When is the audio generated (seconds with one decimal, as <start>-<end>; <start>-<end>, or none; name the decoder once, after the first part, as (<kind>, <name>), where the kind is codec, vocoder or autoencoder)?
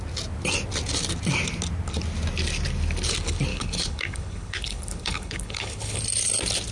3.5-6.0 (codec, HILCodec)